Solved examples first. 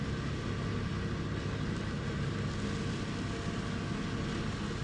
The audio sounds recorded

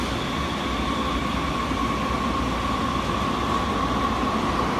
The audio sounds recorded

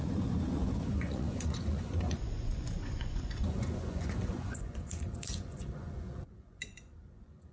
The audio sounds remade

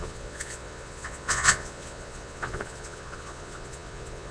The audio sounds remade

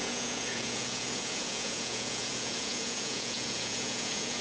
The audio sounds remade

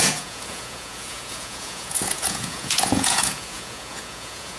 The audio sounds remade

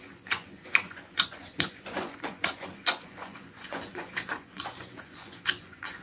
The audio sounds remade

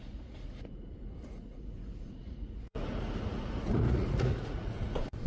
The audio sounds remade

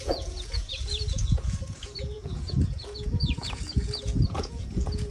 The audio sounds remade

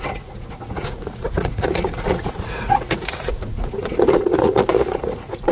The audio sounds remade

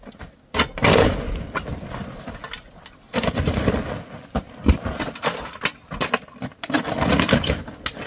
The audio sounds recorded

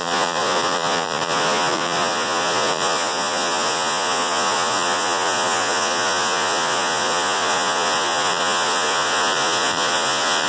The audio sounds remade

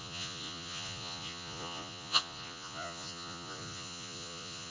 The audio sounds remade